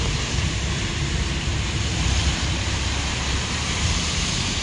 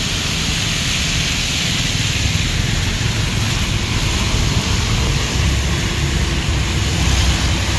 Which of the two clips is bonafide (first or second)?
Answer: second